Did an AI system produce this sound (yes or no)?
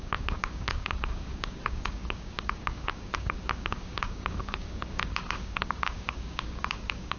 yes